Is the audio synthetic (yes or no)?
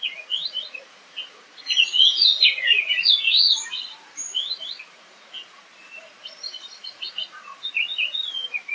yes